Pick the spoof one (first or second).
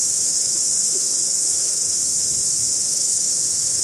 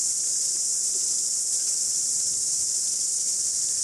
first